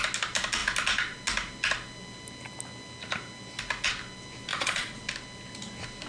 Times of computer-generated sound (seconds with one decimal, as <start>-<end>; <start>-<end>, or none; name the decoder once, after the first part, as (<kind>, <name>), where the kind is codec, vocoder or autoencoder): 4.5-5.0 (vocoder, Vocos)